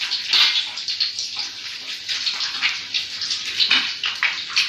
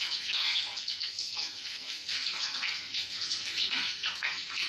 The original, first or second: first